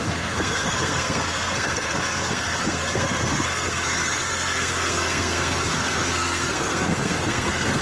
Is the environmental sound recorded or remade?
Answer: remade